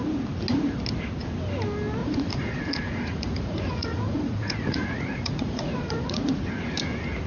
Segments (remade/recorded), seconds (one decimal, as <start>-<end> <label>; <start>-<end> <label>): 0.0-2.0 recorded; 2.0-6.4 remade; 6.4-7.3 recorded